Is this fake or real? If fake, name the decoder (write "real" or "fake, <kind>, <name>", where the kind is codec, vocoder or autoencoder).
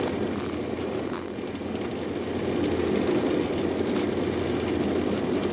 real